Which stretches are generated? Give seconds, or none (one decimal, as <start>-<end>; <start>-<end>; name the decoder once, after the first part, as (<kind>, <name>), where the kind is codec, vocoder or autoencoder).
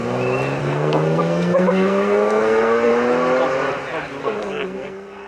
0.6-2.9 (codec, SNAC); 4.2-5.3